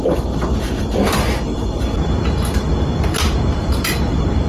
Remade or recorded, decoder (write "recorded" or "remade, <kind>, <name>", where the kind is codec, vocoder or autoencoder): recorded